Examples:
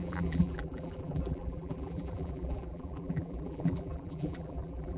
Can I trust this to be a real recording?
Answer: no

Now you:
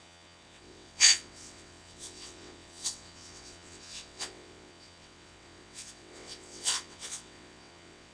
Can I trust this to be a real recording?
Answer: no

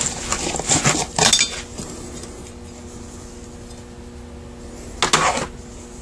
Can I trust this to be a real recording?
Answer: yes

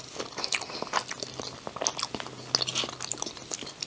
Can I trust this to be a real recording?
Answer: yes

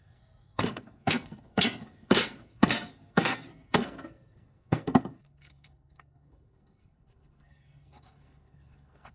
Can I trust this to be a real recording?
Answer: no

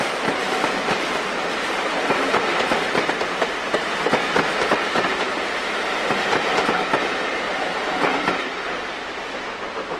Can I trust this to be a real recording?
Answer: yes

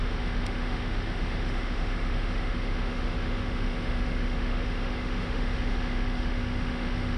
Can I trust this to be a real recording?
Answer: no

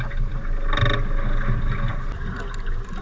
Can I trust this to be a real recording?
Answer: yes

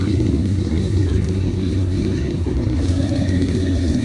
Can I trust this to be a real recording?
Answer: no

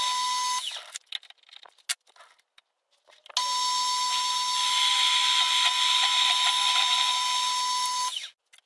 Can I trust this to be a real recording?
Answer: yes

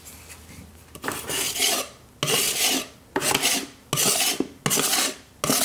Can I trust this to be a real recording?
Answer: yes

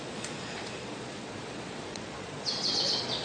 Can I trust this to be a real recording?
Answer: no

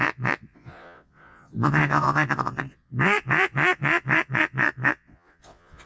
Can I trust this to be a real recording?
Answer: no